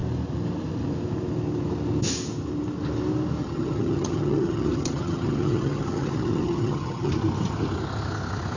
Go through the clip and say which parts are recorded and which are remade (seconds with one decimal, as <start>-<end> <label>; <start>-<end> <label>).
0.0-3.4 recorded; 3.4-7.1 remade; 7.1-8.6 recorded